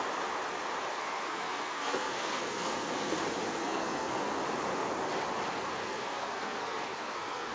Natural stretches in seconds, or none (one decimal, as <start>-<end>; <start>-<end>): 0.0-0.9; 3.1-3.6; 4.4-5.8